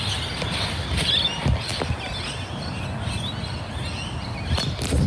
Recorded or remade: recorded